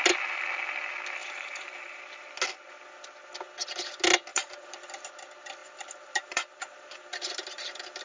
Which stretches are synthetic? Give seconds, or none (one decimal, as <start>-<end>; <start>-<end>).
1.2-2.0; 4.3-5.1; 5.6-8.0